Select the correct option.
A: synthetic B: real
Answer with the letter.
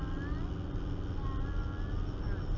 B